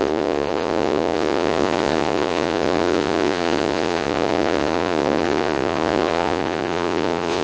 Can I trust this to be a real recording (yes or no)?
no